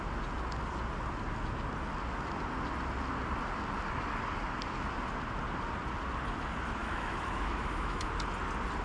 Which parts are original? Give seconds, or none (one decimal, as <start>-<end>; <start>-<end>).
0.0-6.8; 8.1-8.8